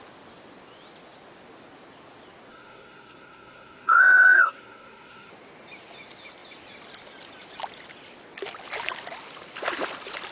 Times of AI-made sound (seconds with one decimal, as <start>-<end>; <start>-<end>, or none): 2.5-5.3